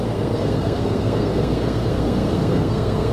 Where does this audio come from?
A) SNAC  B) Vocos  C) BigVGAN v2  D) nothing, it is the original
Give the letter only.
A